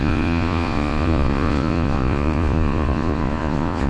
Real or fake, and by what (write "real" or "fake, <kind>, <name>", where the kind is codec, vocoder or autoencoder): fake, vocoder, Vocos